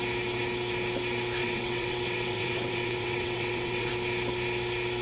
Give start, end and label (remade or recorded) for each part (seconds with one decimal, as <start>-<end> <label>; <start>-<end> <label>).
0.0-1.4 recorded; 1.4-3.9 remade; 3.9-5.0 recorded